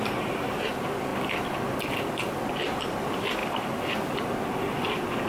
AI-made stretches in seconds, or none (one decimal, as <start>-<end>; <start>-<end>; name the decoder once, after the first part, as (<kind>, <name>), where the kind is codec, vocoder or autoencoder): 0.0-0.7 (vocoder, BigVGAN v2)

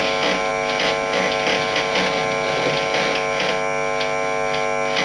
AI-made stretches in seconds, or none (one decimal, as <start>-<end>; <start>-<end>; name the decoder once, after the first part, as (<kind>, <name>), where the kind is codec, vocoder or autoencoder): none

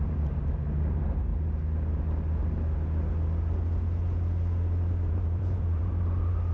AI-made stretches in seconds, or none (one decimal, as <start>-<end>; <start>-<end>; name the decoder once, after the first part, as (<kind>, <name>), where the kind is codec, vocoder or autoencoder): 0.0-1.3 (vocoder, BigVGAN v2); 5.1-6.5

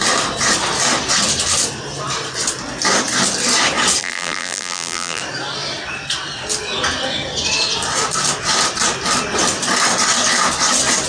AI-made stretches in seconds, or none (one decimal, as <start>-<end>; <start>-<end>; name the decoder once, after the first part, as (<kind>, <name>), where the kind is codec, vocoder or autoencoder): 4.0-5.2 (vocoder, BigVGAN v2)

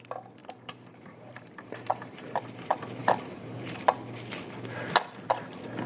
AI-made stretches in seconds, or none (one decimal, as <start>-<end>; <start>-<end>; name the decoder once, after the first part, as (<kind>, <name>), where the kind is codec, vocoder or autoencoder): 0.4-2.4 (vocoder, BigVGAN v2); 3.0-3.8